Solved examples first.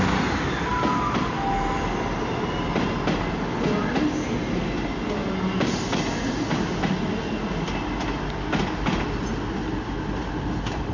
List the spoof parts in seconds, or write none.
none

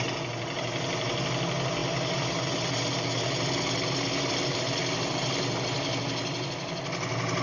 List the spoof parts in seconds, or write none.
none

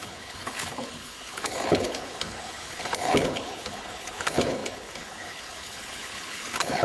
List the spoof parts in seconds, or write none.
0.0-6.8 (codec, HILCodec)

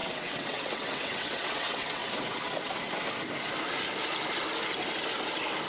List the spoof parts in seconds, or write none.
0.0-2.0 (vocoder, WaveNeXt)

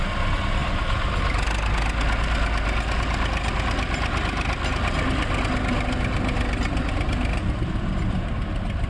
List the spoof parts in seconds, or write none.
none